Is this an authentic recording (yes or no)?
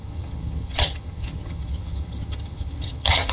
no